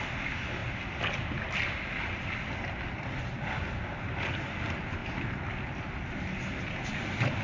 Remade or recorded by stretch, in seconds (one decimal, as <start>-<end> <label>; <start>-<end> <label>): 0.0-7.4 recorded